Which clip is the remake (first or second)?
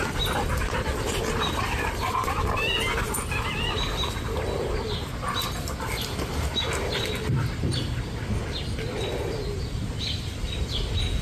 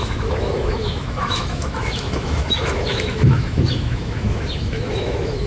second